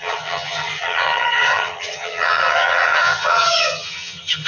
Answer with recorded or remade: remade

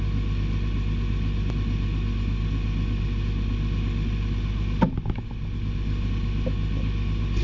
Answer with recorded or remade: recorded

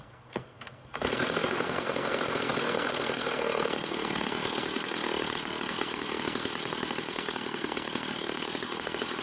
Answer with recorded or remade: remade